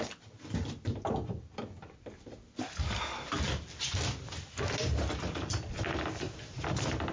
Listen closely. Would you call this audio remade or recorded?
recorded